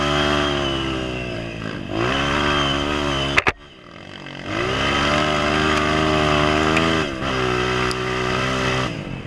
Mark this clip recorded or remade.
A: recorded